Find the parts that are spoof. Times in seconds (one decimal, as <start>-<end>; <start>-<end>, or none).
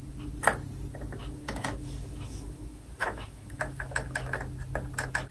1.2-4.4